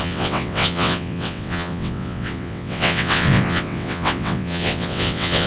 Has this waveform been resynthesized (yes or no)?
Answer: yes